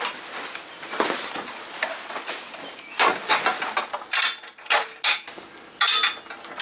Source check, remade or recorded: recorded